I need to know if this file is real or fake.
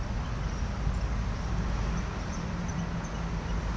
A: real